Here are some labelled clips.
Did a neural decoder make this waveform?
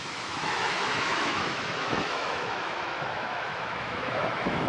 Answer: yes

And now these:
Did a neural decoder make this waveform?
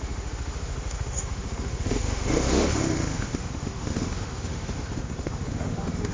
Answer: yes